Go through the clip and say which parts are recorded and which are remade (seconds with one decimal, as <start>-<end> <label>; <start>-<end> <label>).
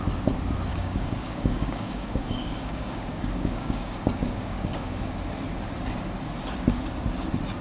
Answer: 0.0-0.7 recorded; 0.7-5.0 remade; 5.0-7.6 recorded